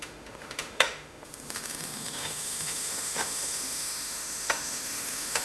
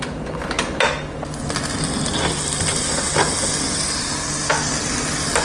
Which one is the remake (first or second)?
first